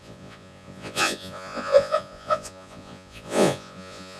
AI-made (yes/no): yes